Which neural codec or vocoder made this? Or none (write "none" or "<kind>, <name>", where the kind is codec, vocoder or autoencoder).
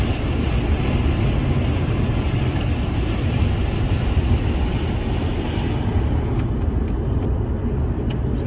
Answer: none